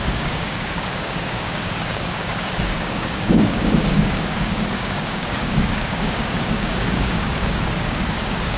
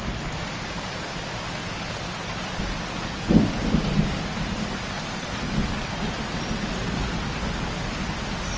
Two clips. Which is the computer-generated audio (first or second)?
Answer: first